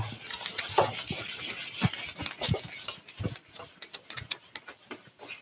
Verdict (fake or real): real